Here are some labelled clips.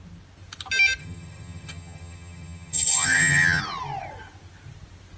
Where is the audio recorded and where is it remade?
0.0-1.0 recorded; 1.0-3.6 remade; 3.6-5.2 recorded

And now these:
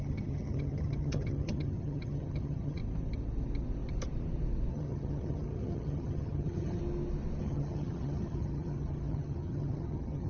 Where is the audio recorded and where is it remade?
0.0-2.8 remade; 2.8-4.7 recorded; 4.7-6.8 remade; 6.8-7.4 recorded; 7.4-10.3 remade